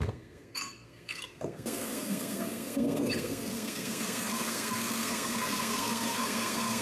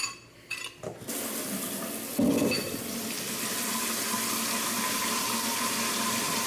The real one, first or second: second